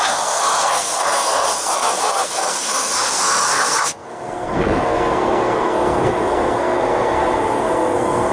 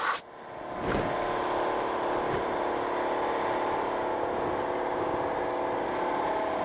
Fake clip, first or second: first